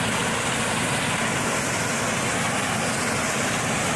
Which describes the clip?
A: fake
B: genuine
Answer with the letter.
B